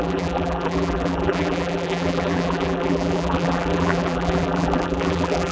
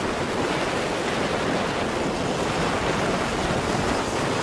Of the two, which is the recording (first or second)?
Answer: second